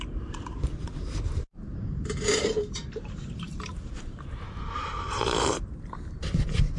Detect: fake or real fake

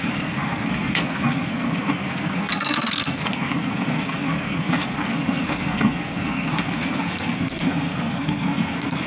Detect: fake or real fake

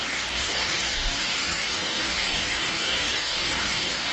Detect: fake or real fake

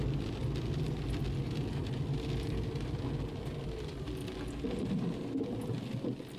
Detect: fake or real real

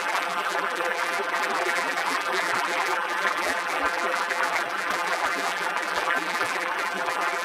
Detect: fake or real fake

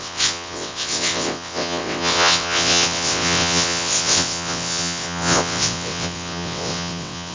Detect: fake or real fake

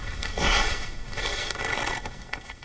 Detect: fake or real fake